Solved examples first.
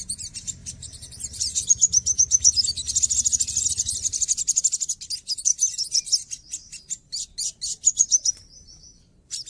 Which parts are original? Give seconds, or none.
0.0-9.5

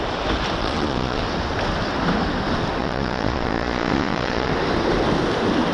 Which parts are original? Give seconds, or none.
0.0-0.6; 1.2-2.8; 4.5-5.7

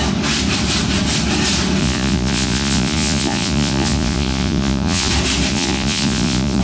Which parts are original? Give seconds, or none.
0.0-1.8; 5.1-5.5